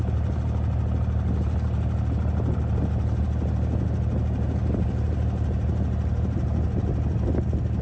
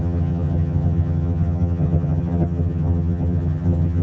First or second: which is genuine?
first